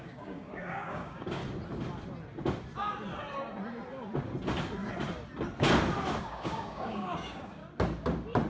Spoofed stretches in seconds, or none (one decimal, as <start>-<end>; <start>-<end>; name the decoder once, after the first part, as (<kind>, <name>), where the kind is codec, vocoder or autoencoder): 0.0-1.4 (codec, DAC); 6.2-7.6